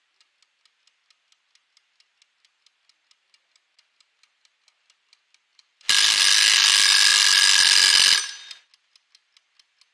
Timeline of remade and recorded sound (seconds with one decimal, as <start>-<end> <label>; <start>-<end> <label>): 0.0-5.5 recorded; 5.5-6.2 remade; 6.2-9.9 recorded